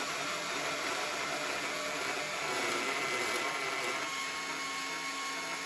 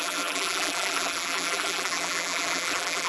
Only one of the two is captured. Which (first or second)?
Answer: first